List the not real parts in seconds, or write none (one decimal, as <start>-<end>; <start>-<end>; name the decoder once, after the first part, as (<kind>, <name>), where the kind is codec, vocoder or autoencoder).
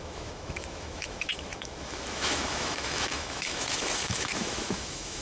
0.0-5.2 (autoencoder, DAC-VAE)